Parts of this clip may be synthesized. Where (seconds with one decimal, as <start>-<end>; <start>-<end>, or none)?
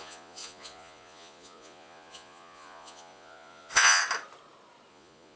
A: 0.0-4.0; 4.9-5.4